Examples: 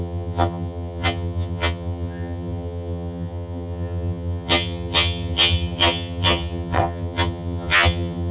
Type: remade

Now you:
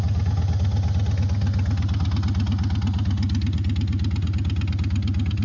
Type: recorded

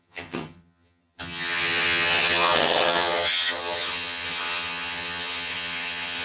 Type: remade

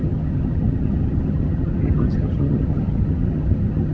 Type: remade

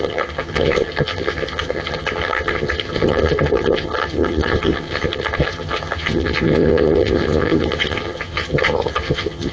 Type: remade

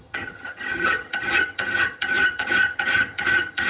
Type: remade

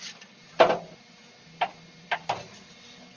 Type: recorded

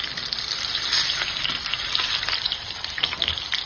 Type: recorded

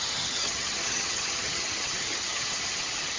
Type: remade